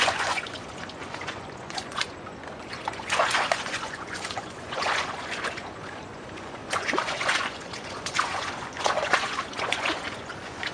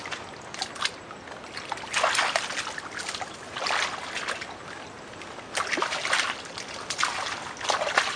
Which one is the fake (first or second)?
first